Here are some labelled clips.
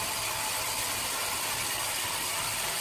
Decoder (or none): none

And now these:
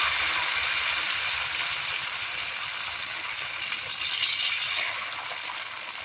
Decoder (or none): vocoder, BigVGAN v2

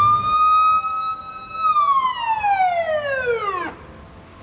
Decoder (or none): none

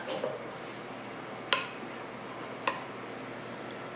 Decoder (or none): none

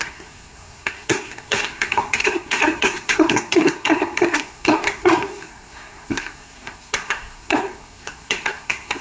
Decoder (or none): codec, SNAC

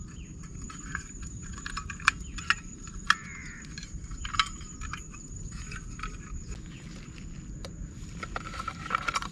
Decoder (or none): none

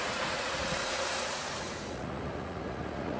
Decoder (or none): vocoder, Vocos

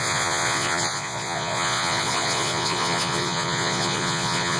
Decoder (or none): vocoder, Vocos